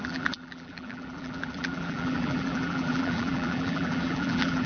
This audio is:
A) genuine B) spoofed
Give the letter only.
B